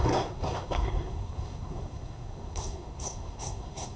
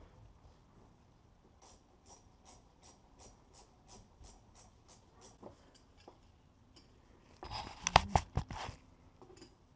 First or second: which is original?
second